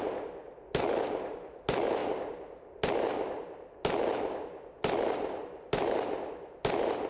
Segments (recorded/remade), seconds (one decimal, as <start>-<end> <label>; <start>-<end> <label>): 0.0-7.1 recorded